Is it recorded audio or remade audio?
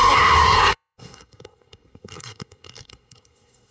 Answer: remade